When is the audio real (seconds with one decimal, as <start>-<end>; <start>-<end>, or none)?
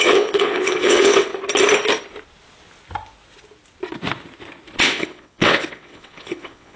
1.3-4.8